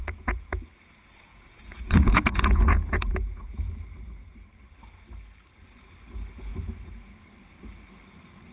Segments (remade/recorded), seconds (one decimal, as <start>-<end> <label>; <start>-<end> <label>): 0.0-0.7 remade; 0.7-1.3 recorded; 1.3-3.7 remade; 3.7-8.5 recorded